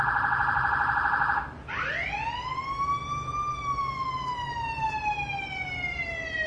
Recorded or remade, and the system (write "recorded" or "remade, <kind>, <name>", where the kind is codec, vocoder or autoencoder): recorded